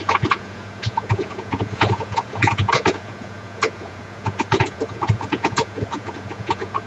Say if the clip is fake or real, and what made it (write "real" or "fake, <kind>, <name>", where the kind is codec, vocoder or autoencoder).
fake, vocoder, Vocos